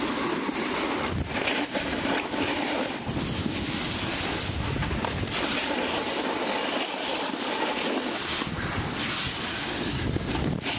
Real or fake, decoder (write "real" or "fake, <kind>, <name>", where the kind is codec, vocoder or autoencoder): real